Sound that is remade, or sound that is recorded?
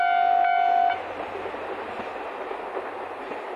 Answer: recorded